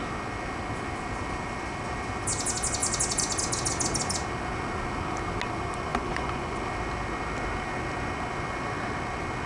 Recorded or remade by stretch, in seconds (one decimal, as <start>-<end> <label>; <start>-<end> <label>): 0.0-5.9 recorded; 5.9-6.6 remade; 6.6-9.5 recorded